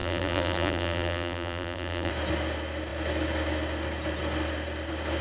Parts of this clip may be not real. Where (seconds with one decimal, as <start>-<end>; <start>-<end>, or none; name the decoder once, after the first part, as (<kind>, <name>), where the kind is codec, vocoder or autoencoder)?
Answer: 0.0-2.1 (vocoder, BigVGAN v2)